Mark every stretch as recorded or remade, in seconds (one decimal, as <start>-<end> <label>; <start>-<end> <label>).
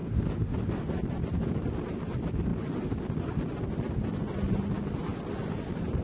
0.0-6.0 recorded